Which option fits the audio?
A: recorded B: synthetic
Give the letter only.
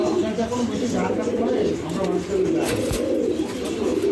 A